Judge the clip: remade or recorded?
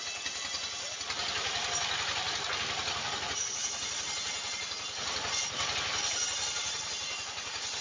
recorded